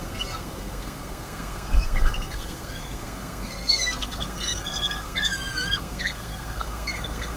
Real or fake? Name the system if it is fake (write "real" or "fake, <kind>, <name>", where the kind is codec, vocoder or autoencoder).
fake, codec, SNAC